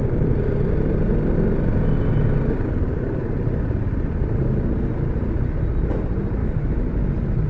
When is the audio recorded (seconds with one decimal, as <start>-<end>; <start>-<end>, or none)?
0.0-6.4; 6.9-7.5